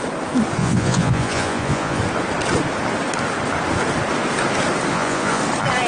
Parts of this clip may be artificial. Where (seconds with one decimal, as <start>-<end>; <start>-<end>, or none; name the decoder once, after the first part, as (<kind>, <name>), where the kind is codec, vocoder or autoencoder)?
0.6-2.0 (vocoder, Vocos); 4.9-5.4